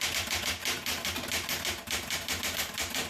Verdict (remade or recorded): recorded